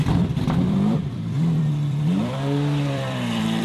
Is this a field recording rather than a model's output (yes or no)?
no